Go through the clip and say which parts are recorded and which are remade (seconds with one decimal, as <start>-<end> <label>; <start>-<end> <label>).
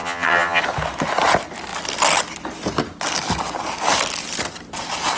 0.0-0.6 remade; 0.6-5.2 recorded